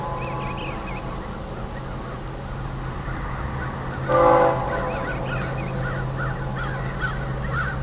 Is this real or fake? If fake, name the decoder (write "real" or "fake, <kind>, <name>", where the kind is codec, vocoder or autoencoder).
real